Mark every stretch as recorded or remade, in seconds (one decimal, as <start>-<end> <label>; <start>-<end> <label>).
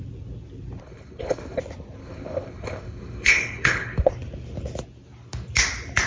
0.0-0.8 recorded; 0.8-1.6 remade; 1.6-2.0 recorded; 2.0-4.1 remade; 4.1-6.1 recorded